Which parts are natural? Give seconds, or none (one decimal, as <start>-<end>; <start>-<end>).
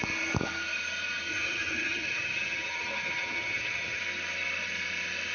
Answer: 0.0-1.3; 4.0-5.3